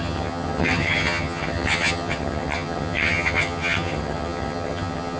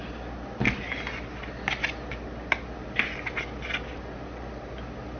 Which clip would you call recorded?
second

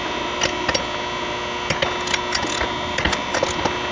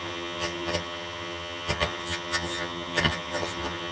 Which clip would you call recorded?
first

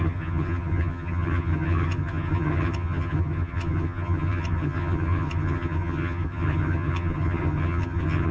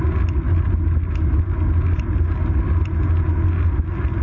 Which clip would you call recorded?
second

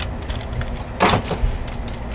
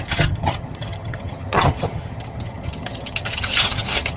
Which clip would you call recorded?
first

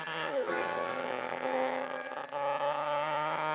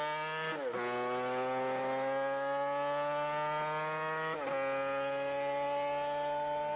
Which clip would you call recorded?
second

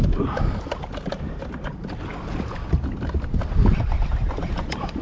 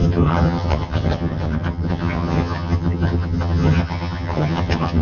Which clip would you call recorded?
first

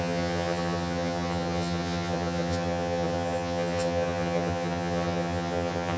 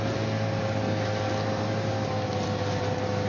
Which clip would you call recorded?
second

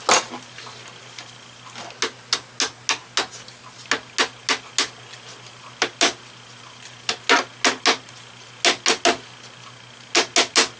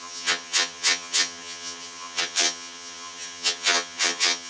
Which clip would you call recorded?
first